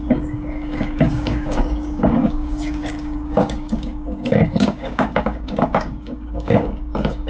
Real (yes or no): no